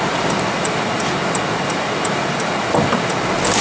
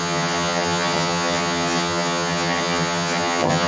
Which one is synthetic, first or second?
second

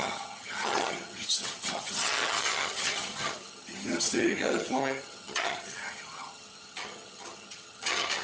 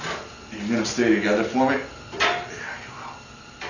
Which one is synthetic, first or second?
first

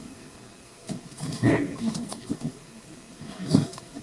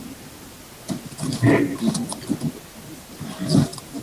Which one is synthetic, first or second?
first